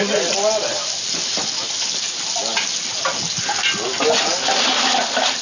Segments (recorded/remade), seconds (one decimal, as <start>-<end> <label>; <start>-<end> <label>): 0.0-5.4 recorded